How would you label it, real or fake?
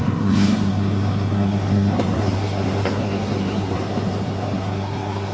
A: fake